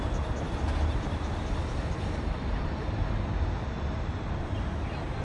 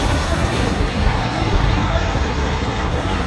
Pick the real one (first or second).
first